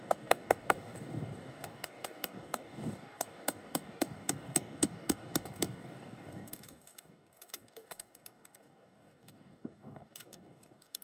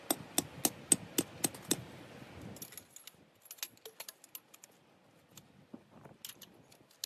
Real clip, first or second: second